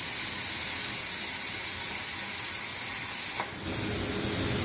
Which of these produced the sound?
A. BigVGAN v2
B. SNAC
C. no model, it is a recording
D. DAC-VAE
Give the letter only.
C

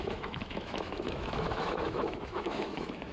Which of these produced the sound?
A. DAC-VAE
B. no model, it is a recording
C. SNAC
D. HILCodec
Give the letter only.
A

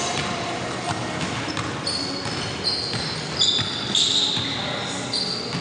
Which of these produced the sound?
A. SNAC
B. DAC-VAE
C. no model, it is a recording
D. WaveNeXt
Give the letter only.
C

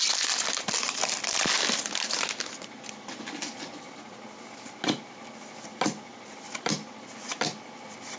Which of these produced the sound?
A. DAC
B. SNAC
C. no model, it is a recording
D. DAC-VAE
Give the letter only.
C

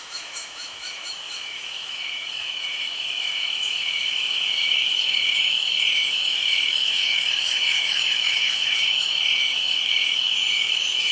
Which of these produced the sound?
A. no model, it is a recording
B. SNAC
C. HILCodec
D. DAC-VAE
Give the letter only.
D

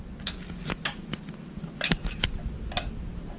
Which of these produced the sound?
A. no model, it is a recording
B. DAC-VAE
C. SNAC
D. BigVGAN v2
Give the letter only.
A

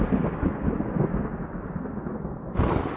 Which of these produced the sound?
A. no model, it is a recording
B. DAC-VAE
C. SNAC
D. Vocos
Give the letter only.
A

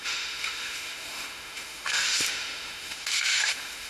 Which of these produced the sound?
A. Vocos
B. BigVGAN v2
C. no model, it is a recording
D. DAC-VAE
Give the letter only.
D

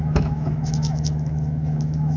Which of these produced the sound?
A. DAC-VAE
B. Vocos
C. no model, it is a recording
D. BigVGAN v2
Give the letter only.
A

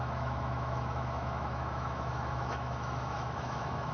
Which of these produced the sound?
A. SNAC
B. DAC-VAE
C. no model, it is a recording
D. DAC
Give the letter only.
B